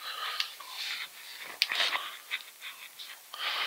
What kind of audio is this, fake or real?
real